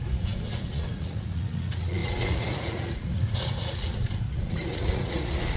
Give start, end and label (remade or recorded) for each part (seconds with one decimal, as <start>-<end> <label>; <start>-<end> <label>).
0.0-5.6 remade